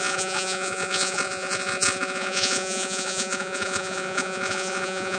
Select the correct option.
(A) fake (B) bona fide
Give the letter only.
A